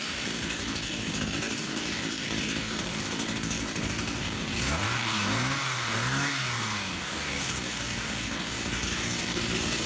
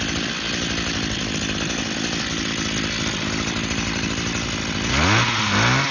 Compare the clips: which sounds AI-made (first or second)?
first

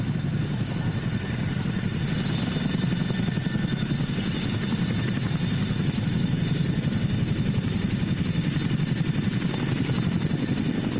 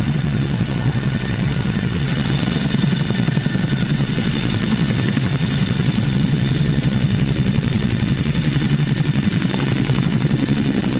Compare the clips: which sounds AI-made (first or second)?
second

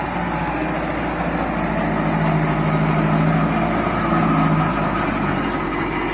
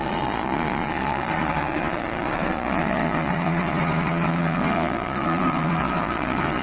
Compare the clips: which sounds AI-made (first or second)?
second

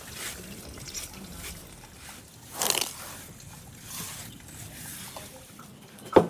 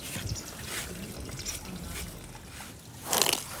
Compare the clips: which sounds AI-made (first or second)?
first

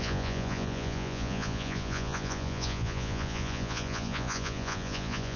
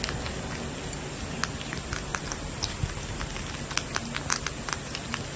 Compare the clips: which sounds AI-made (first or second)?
first